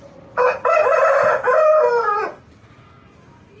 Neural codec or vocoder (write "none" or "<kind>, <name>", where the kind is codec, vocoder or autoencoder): none